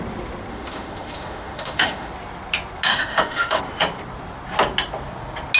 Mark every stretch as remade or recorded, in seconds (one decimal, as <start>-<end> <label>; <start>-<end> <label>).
0.0-0.5 recorded; 0.5-2.1 remade; 2.1-2.9 recorded; 2.9-3.6 remade; 3.6-5.6 recorded